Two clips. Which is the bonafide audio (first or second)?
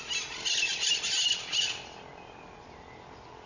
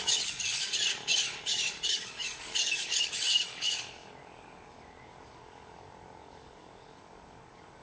first